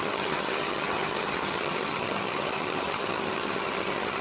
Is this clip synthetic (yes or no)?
yes